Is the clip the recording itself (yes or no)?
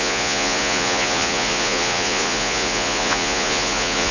no